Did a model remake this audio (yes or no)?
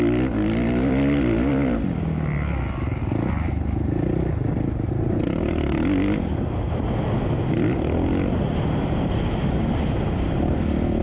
no